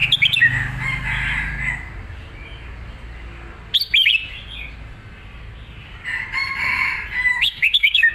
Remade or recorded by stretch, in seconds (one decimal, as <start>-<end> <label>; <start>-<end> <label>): 0.0-7.3 recorded; 7.3-8.1 remade